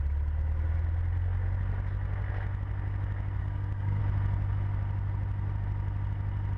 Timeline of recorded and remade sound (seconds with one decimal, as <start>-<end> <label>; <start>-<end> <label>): 0.0-3.4 recorded; 3.4-4.0 remade; 4.0-6.6 recorded